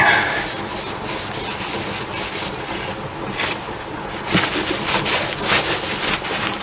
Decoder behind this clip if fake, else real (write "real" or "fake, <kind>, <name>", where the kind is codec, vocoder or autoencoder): real